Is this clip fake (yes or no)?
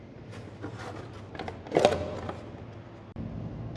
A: no